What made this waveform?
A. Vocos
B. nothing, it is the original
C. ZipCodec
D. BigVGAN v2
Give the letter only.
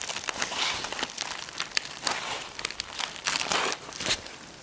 D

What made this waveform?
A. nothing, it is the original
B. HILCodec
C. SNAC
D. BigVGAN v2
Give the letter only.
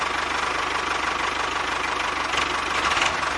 A